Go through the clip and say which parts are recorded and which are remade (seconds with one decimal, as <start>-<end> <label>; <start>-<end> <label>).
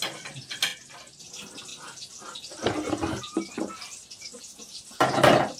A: 0.0-5.6 recorded